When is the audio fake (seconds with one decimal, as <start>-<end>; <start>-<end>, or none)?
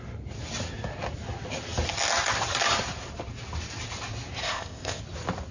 4.4-5.0